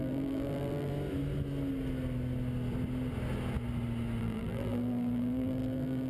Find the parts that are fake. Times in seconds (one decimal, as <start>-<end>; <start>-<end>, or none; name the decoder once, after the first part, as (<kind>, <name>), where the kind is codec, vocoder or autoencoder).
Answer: 0.0-0.9 (vocoder, BigVGAN v2); 4.2-6.1